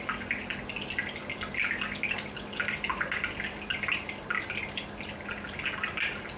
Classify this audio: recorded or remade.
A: recorded